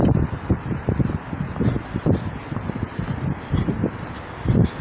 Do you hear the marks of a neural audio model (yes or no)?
no